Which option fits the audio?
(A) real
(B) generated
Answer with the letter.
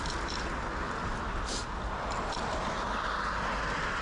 A